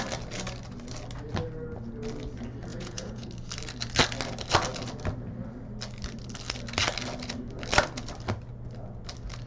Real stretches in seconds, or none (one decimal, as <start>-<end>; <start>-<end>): 0.0-2.7; 3.3-9.5